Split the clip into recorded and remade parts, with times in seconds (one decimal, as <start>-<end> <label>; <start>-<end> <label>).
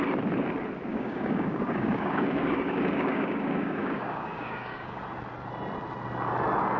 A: 0.0-0.9 recorded; 0.9-5.0 remade; 5.0-6.8 recorded